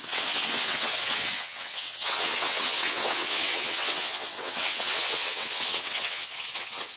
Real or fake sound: fake